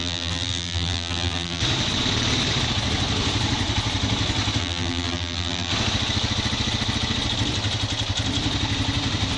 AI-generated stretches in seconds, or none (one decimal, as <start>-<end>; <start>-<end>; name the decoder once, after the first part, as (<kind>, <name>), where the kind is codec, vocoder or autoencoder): 0.0-1.6 (vocoder, BigVGAN v2); 4.6-5.7